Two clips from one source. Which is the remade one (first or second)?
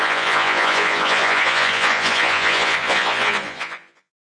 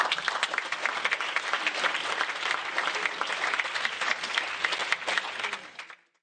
first